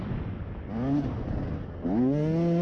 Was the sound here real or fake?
real